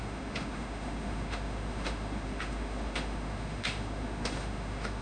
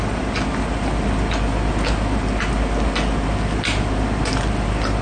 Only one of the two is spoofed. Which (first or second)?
first